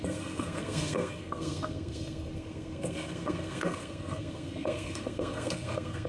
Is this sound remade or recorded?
remade